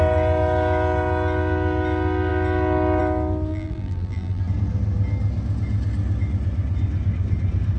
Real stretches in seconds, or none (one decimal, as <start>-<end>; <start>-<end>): 0.0-3.5; 4.4-7.8